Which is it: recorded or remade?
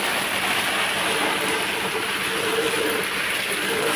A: recorded